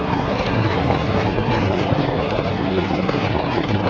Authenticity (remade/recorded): remade